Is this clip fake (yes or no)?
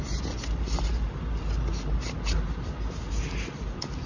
no